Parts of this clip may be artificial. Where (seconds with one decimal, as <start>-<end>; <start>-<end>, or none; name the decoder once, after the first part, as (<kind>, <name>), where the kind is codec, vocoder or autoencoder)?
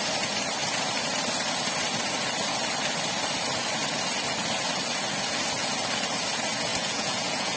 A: 6.7-7.6 (vocoder, Vocos)